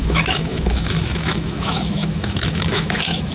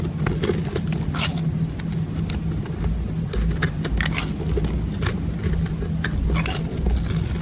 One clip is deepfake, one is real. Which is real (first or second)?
second